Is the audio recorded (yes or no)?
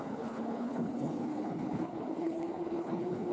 no